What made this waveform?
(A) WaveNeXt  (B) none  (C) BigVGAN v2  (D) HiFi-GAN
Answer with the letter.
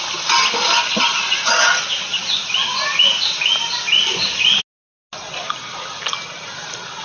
B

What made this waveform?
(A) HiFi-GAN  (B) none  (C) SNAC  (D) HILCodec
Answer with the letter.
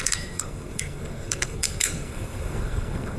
C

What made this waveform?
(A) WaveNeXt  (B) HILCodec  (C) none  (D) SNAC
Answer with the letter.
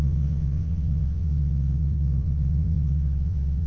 A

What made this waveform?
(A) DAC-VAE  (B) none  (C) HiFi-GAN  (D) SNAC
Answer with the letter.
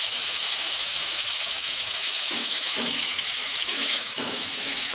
A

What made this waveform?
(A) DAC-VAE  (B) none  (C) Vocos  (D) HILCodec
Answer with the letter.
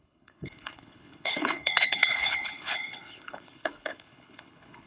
D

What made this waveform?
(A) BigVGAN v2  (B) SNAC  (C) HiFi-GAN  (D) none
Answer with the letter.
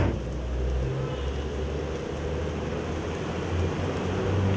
D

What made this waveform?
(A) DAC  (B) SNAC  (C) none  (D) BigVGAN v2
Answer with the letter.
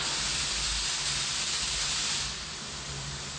C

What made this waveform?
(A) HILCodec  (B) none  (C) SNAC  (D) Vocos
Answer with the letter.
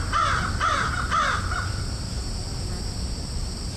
B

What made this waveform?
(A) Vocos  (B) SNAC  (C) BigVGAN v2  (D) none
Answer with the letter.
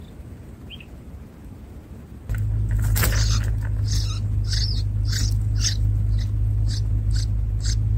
D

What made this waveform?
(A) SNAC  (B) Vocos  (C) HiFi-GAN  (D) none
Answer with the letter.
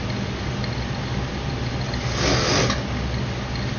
D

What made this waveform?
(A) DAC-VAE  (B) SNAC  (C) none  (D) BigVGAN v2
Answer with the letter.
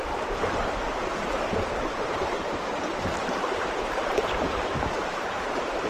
D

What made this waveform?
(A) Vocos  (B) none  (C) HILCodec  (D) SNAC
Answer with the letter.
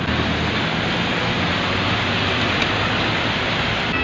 B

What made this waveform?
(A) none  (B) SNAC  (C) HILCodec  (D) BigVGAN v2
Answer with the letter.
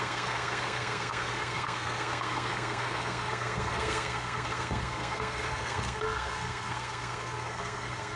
B